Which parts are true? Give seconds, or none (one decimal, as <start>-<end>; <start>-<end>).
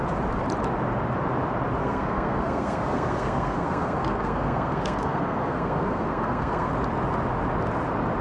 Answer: 0.0-1.8; 6.7-8.2